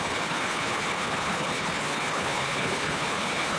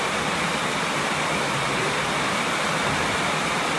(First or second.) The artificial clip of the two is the first